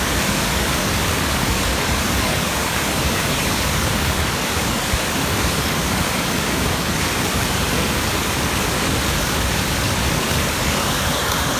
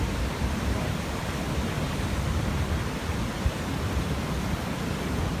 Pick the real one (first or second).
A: second